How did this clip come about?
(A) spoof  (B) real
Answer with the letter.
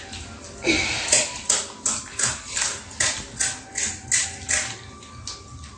B